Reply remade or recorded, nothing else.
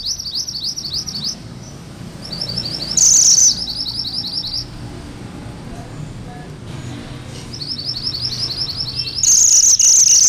recorded